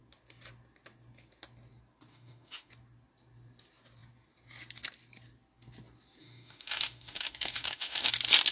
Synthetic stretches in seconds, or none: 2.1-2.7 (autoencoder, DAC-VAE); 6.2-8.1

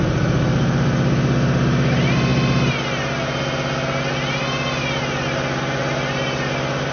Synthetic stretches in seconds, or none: none

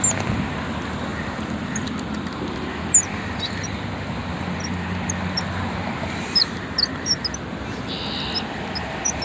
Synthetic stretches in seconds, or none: none

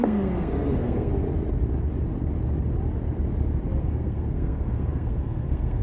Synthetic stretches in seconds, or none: 0.0-1.1 (codec, SNAC); 3.8-5.8

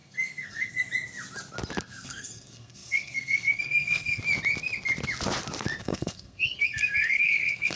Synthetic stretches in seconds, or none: 0.0-0.9 (codec, SNAC); 1.9-4.2; 5.8-7.8

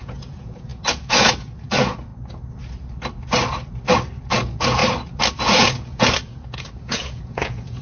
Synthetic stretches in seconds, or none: 0.0-2.1 (vocoder, Vocos); 4.3-4.8; 5.4-7.8